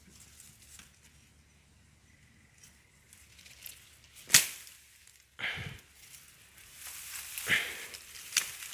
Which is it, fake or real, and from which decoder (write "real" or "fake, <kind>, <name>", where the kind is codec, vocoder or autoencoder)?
real